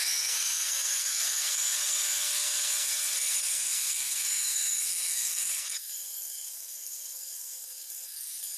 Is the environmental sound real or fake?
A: fake